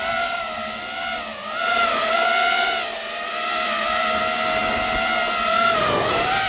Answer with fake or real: real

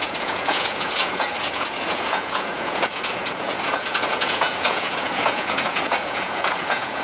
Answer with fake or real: fake